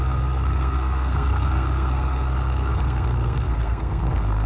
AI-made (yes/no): yes